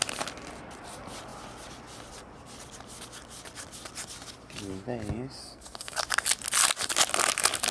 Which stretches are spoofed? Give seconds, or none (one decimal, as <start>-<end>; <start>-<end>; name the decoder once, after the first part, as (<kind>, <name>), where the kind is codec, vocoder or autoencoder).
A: 5.4-6.0 (codec, SNAC)